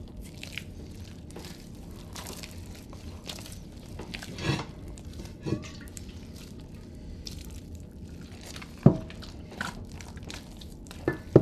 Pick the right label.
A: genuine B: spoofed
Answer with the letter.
B